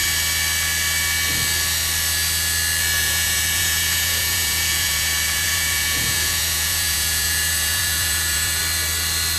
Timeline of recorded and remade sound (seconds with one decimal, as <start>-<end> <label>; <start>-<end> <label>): 0.0-3.0 recorded; 3.0-8.6 remade; 8.6-9.4 recorded